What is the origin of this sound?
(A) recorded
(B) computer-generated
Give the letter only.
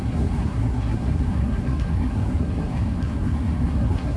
B